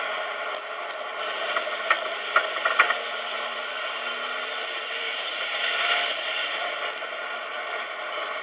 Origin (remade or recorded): remade